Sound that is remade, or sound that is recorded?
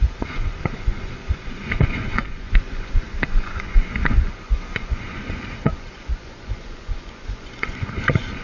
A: remade